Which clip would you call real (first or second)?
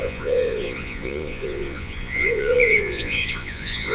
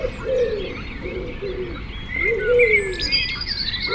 second